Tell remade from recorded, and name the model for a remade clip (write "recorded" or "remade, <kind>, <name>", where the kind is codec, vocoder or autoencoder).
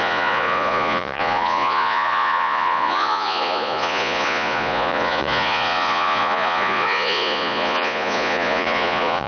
remade, vocoder, Vocos